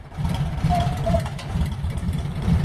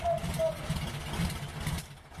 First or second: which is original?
second